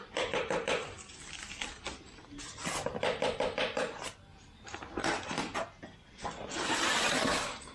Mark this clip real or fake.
real